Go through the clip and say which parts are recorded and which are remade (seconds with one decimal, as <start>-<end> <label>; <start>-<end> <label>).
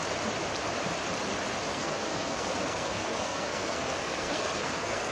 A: 0.0-1.7 recorded; 1.7-5.1 remade